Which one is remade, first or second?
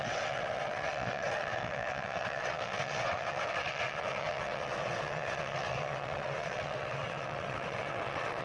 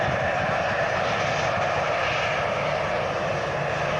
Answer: first